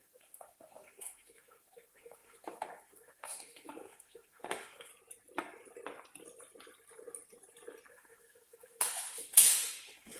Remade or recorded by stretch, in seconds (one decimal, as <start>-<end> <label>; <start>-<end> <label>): 0.0-4.9 remade; 4.9-7.9 recorded; 7.9-10.2 remade